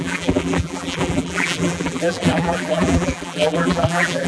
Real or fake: fake